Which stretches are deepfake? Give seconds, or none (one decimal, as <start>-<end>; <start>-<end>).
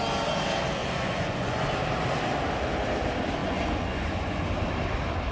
0.8-1.7; 3.4-4.4